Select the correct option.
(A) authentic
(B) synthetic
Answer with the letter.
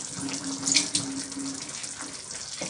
A